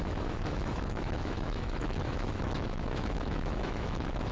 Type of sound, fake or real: fake